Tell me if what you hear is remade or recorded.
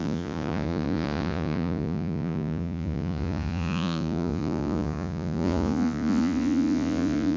remade